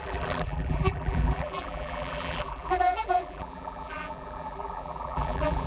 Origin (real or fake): fake